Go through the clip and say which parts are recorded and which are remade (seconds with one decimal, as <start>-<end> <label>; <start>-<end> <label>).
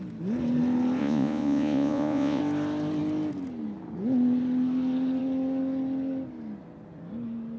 0.0-1.0 recorded; 1.0-2.4 remade; 2.4-7.6 recorded